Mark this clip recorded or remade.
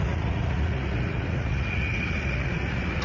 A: remade